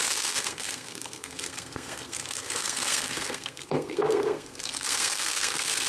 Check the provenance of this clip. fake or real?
fake